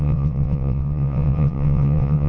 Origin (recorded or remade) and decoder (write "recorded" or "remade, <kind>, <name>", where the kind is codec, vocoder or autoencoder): remade, vocoder, WaveNeXt